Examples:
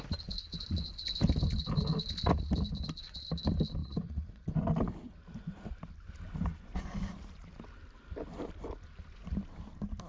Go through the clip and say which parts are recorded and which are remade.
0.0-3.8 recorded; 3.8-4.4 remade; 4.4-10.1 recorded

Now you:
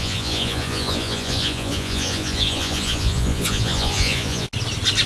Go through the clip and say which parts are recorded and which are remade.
0.0-4.5 remade; 4.5-5.1 recorded

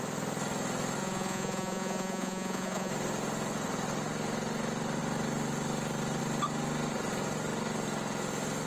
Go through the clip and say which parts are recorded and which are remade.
0.0-1.0 recorded; 1.0-2.9 remade; 2.9-8.7 recorded

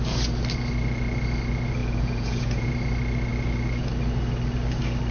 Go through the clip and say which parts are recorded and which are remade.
0.0-1.8 recorded; 1.8-2.7 remade; 2.7-5.1 recorded

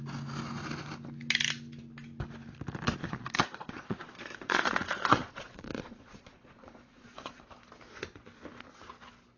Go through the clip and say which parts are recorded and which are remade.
0.0-3.0 recorded; 3.0-7.4 remade; 7.4-9.4 recorded

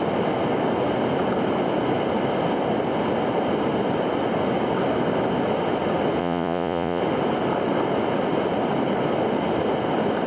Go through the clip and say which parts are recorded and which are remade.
0.0-6.2 recorded; 6.2-7.0 remade; 7.0-10.3 recorded

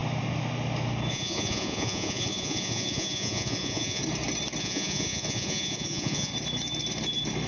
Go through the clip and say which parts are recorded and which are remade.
0.0-1.1 recorded; 1.1-4.0 remade; 4.0-4.6 recorded; 4.6-6.3 remade; 6.3-7.5 recorded